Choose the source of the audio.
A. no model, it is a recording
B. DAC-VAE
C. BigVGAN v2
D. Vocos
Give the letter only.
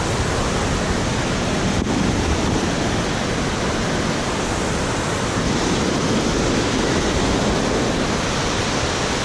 A